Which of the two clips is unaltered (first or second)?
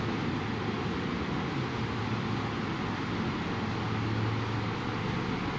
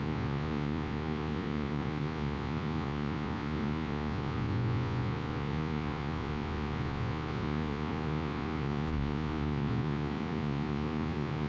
first